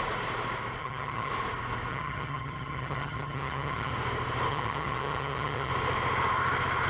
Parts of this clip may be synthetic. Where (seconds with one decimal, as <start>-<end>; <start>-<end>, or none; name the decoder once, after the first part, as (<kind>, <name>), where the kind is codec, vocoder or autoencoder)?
0.8-1.3 (vocoder, HiFi-GAN); 1.9-3.9; 4.5-5.7